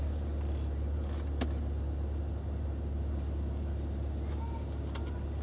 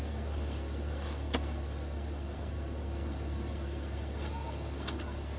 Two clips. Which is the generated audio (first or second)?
second